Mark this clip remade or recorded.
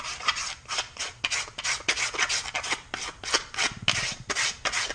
recorded